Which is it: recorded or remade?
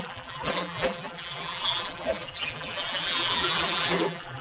remade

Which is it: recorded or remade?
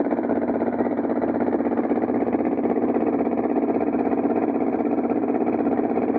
remade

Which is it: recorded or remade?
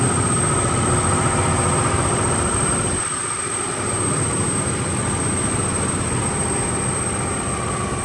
recorded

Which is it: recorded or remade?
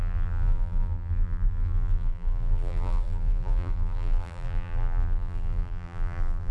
remade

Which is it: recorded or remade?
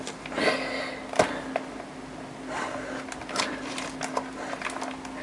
recorded